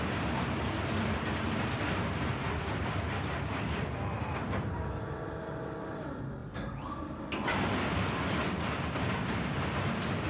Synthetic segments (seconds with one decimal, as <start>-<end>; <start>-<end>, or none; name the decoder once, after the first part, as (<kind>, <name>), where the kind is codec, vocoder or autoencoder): none